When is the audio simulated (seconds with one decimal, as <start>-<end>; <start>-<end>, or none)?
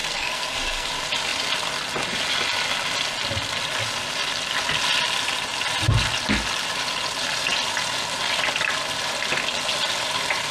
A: 0.0-0.9